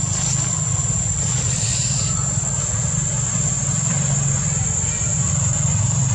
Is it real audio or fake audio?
real